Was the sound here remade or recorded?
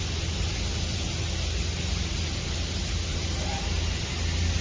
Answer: recorded